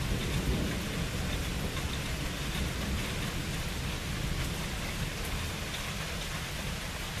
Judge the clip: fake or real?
real